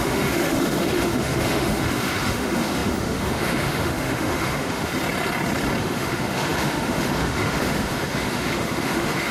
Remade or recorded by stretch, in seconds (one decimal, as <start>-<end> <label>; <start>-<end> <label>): 0.0-4.9 remade; 4.9-5.8 recorded; 5.8-9.3 remade